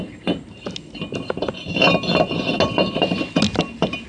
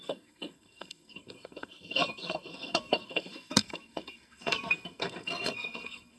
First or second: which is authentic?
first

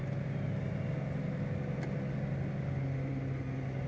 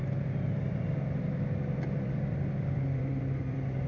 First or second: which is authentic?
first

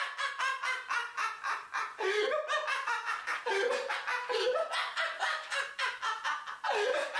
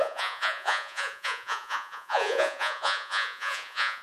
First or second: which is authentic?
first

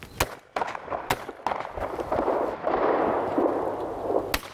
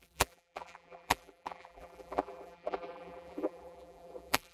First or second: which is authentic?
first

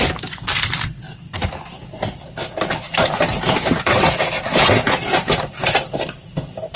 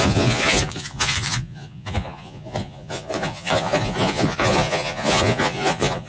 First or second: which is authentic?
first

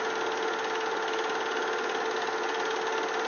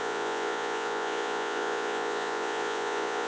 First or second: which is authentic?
first